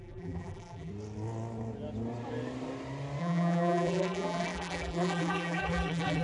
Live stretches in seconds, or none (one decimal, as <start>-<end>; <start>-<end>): 0.9-3.2

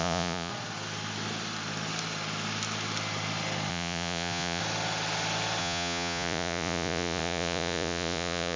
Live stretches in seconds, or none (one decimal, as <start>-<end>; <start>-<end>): 0.5-3.7; 4.6-5.6

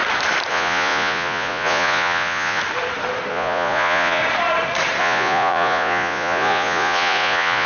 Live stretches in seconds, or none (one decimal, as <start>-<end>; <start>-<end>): 0.0-0.5; 2.6-3.3; 4.2-5.0

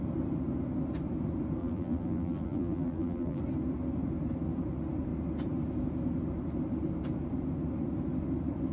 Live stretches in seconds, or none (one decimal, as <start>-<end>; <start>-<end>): 0.0-1.6; 3.4-8.7

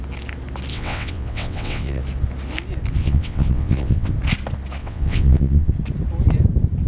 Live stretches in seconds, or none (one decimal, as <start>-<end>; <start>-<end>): 0.0-0.7; 2.0-3.0; 4.1-4.8; 5.7-6.9